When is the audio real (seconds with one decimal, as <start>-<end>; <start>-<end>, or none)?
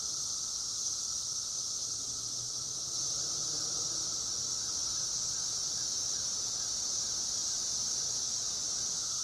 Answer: 0.0-9.2